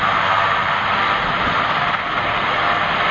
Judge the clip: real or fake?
real